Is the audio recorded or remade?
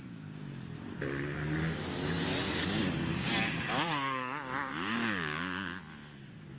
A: recorded